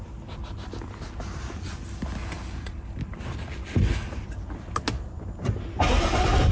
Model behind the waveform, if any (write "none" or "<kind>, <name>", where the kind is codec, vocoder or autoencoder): none